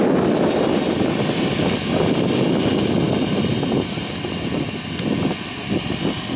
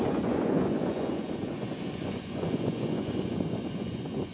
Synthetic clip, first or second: second